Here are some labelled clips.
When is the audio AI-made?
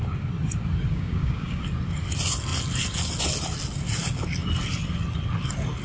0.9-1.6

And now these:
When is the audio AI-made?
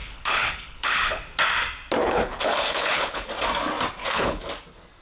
0.0-1.2; 2.0-3.3; 4.0-4.5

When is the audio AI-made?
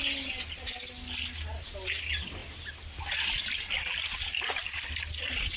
none